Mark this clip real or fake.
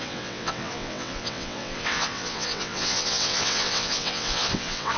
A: fake